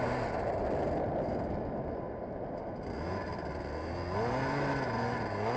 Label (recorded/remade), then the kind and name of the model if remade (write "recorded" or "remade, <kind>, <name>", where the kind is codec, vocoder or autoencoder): recorded